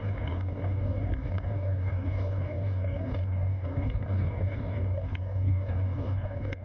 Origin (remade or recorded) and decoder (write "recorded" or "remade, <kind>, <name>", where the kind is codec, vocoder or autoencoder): remade, codec, DAC